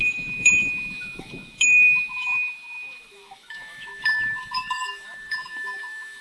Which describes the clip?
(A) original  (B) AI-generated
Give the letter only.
B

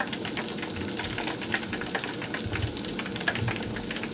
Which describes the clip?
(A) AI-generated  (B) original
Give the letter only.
B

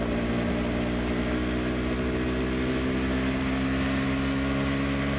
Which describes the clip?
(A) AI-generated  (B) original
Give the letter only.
B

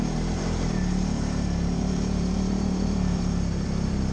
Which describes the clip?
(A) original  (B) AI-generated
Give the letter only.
B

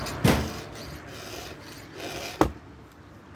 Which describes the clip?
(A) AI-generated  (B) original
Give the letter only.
B